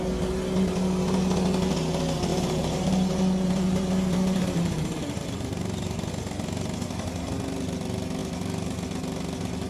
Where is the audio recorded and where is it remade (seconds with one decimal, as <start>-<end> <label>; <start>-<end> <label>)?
0.0-2.3 recorded; 2.3-6.1 remade; 6.1-9.7 recorded